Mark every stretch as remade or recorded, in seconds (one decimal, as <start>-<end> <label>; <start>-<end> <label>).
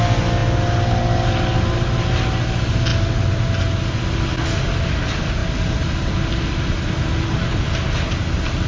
0.0-5.4 recorded; 5.4-6.1 remade; 6.1-8.7 recorded